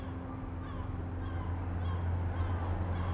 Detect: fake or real real